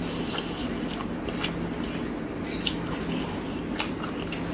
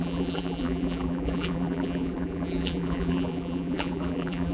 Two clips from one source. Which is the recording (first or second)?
first